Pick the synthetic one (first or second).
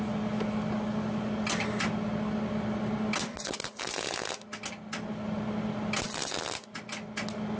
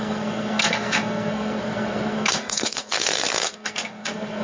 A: second